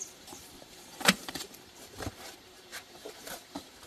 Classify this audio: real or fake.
fake